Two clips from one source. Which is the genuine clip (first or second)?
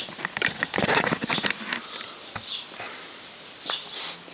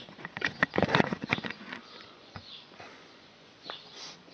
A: first